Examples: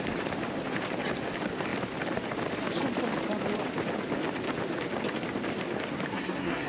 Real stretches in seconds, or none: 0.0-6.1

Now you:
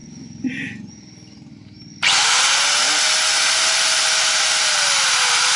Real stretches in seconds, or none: 0.0-5.6